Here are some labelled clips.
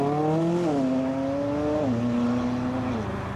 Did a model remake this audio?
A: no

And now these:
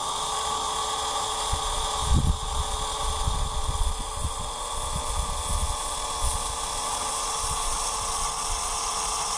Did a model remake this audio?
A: yes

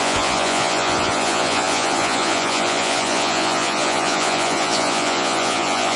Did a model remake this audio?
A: yes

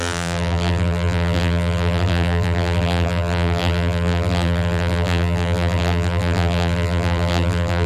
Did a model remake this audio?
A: yes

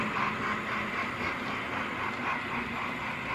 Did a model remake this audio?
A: no